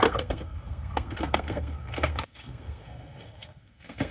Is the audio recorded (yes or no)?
no